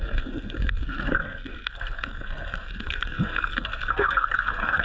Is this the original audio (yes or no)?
no